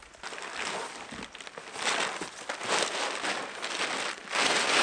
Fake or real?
real